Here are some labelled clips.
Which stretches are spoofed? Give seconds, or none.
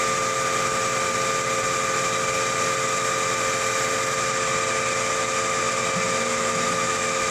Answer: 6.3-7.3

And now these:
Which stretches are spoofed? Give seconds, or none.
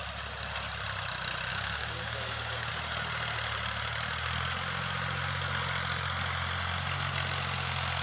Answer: 1.5-2.7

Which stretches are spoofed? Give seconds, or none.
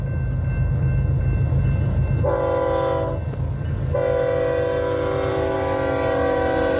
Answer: none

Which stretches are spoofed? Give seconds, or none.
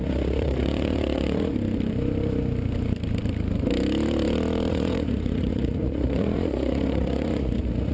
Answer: 0.0-1.5; 4.7-7.9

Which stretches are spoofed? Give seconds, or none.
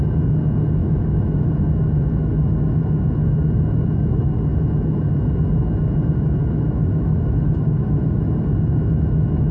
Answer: 0.8-1.5; 6.4-8.3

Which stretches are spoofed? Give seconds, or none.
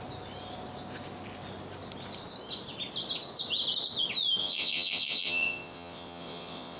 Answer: 4.4-6.8